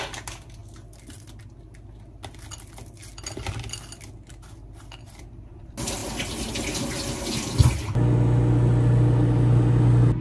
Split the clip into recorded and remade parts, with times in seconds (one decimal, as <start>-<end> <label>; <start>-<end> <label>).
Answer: 0.0-10.2 recorded